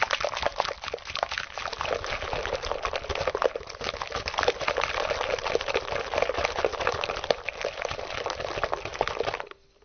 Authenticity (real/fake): real